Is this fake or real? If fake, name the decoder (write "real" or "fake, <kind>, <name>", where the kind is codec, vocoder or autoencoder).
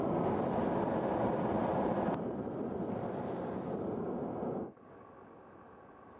real